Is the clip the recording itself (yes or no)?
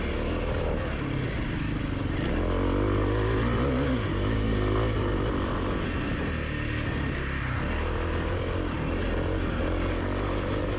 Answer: yes